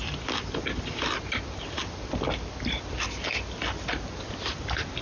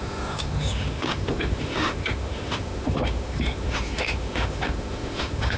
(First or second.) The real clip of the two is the first